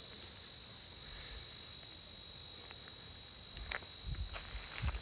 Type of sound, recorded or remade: recorded